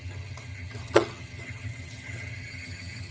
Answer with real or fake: fake